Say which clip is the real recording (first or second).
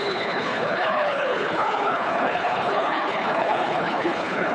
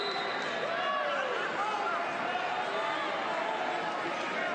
second